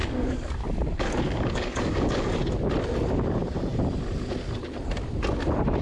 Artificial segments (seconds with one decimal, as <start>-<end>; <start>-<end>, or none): 0.0-2.4